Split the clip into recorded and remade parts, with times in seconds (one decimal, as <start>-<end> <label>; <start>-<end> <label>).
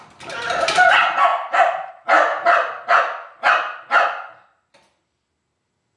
0.0-6.0 recorded